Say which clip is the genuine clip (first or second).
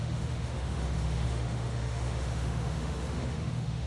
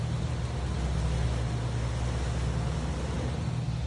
second